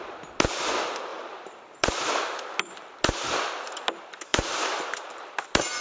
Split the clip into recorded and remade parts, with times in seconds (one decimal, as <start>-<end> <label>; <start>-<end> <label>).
0.0-1.1 recorded; 1.1-1.9 remade; 1.9-4.3 recorded; 4.3-5.3 remade; 5.3-5.8 recorded